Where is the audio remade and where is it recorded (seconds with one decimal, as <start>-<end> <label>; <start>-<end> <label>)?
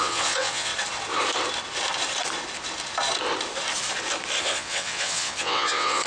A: 0.0-0.7 remade; 0.7-4.4 recorded; 4.4-6.1 remade